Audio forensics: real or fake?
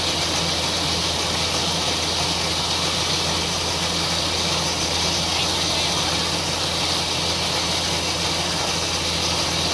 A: real